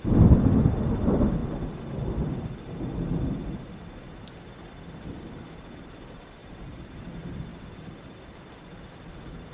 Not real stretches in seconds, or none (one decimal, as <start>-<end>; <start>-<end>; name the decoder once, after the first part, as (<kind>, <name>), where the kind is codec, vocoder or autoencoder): 3.4-4.5 (vocoder, BigVGAN v2); 6.4-7.1